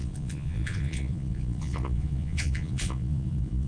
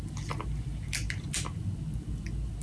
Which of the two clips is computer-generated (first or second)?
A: first